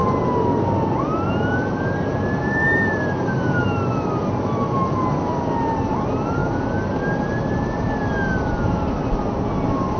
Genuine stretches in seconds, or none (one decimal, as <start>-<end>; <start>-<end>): 0.0-10.0

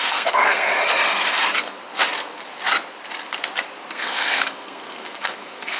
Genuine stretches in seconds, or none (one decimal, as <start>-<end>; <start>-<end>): 0.7-3.9